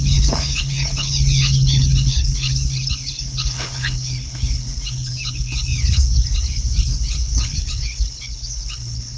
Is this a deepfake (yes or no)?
yes